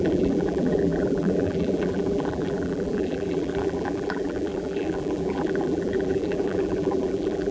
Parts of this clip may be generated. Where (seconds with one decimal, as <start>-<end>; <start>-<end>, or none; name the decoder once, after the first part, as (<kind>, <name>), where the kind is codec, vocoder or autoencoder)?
0.0-7.5 (vocoder, BigVGAN v2)